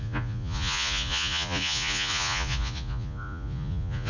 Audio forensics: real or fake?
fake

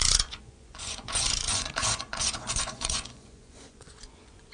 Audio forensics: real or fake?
fake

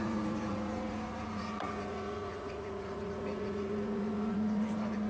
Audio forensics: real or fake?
fake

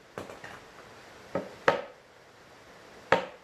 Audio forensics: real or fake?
real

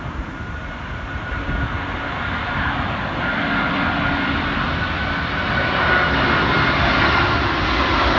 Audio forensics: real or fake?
real